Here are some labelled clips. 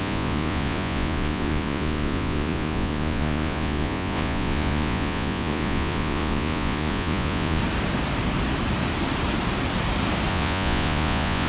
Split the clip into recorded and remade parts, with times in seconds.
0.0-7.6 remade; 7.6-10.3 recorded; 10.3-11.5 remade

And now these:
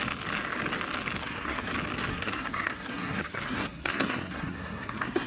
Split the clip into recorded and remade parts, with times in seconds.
0.0-1.2 recorded; 1.2-1.7 remade; 1.7-2.1 recorded; 2.1-5.3 remade

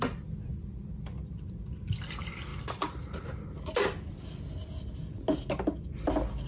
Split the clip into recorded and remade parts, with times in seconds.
0.0-6.5 recorded

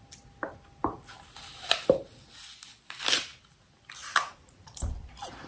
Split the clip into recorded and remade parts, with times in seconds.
0.0-4.0 recorded; 4.0-4.9 remade; 4.9-5.5 recorded

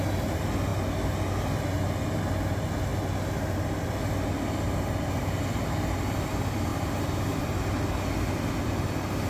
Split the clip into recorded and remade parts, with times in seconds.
0.0-9.3 recorded

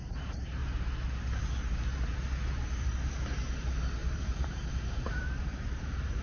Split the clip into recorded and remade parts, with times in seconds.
0.0-0.6 remade; 0.6-2.6 recorded; 2.6-6.2 remade

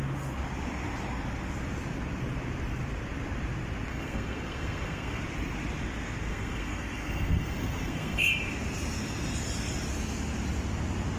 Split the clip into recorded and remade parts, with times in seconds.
0.0-3.9 recorded; 3.9-5.2 remade; 5.2-6.3 recorded; 6.3-8.4 remade; 8.4-11.2 recorded